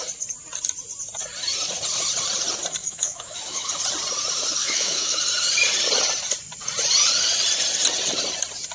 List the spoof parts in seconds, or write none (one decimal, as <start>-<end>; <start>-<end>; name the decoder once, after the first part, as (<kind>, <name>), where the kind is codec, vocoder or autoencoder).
2.8-3.7 (autoencoder, DAC-VAE); 4.6-5.2